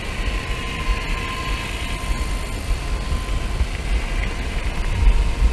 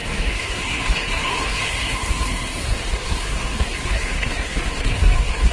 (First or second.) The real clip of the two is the first